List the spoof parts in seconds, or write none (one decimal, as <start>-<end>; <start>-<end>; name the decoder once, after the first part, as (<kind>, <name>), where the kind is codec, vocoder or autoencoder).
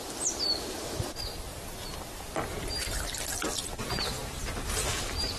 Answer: 1.5-3.5 (vocoder, BigVGAN v2)